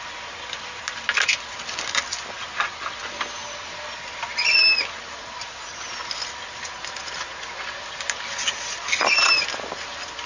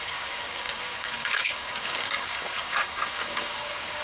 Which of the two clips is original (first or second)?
first